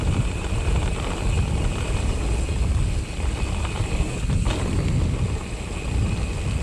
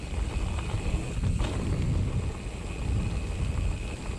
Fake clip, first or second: first